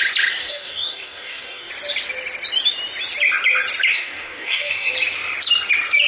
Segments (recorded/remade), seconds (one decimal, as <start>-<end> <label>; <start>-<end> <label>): 0.0-0.4 recorded; 0.4-1.7 remade; 1.7-3.9 recorded; 3.9-4.9 remade; 4.9-6.1 recorded